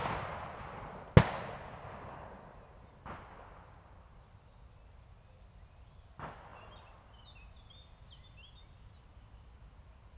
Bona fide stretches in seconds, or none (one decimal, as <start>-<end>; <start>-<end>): 0.0-10.2